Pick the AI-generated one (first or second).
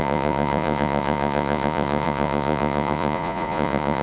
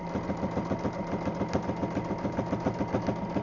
first